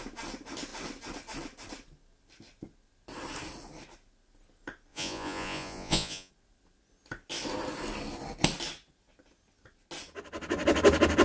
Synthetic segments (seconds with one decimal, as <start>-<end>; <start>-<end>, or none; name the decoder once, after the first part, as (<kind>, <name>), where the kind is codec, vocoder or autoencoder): 4.9-6.3 (vocoder, Vocos)